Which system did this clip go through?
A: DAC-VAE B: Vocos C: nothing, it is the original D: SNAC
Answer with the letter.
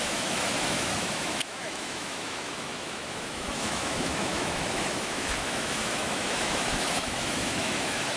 A